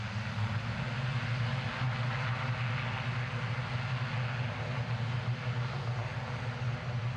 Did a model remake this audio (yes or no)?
no